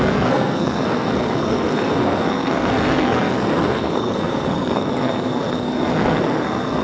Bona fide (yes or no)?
no